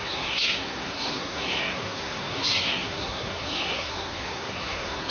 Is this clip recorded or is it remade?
remade